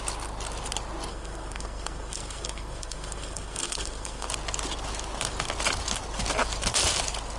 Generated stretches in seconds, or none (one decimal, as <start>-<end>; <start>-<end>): 1.1-4.3